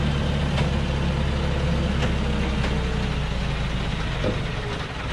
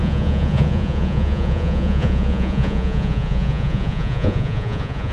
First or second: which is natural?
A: first